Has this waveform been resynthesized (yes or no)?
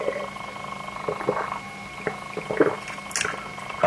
no